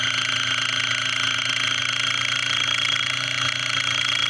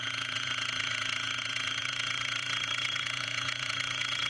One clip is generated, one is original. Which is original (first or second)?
first